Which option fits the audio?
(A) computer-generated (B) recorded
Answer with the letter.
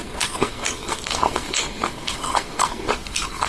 A